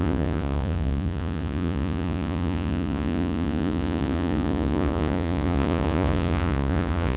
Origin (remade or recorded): remade